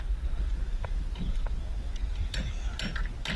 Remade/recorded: recorded